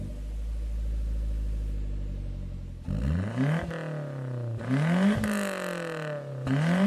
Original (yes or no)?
yes